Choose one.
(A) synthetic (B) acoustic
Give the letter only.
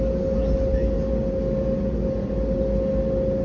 B